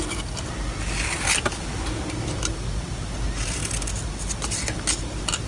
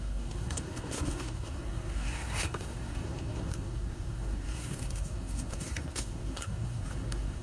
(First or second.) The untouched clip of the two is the first